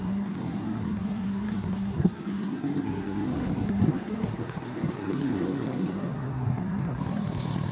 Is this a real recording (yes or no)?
no